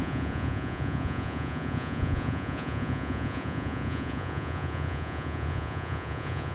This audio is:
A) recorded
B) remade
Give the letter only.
B